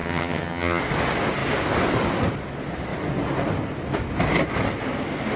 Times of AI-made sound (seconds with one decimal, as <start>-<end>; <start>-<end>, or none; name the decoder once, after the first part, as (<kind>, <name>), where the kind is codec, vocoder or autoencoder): 0.0-0.8 (vocoder, HiFi-GAN)